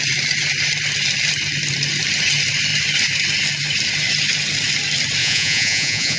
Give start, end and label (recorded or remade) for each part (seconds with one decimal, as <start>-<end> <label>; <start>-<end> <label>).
0.0-5.2 recorded; 5.2-6.2 remade